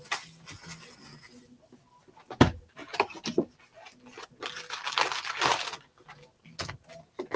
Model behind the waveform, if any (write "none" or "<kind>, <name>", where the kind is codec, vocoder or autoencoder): none